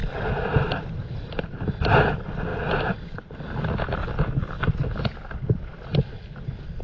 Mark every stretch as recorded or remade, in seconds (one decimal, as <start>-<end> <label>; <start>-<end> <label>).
0.0-6.8 recorded